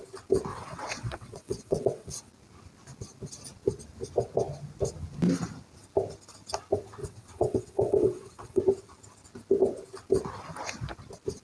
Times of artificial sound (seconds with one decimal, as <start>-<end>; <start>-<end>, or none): 0.5-2.3; 7.0-8.6